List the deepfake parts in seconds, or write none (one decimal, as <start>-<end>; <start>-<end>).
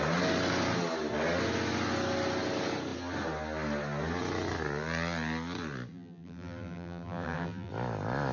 5.9-7.7